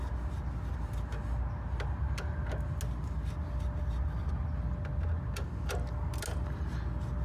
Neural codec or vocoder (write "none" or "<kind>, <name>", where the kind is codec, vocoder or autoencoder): none